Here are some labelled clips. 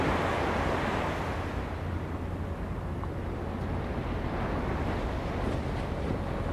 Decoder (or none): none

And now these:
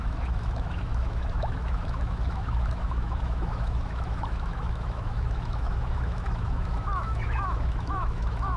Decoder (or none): autoencoder, DAC-VAE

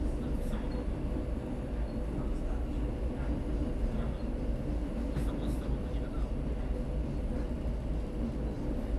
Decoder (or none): none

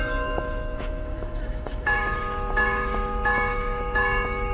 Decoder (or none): autoencoder, DAC-VAE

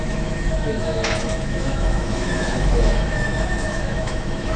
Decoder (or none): autoencoder, DAC-VAE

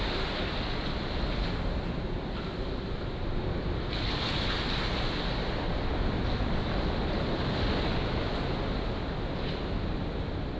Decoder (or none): none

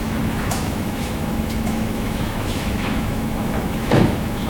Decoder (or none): autoencoder, DAC-VAE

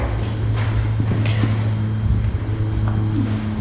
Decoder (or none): none